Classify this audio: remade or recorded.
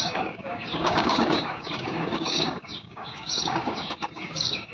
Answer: remade